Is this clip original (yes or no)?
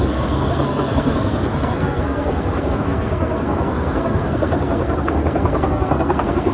no